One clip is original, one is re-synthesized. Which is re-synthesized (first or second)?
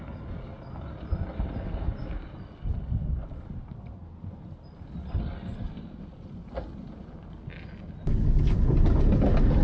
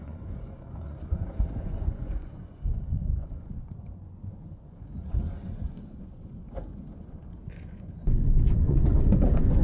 second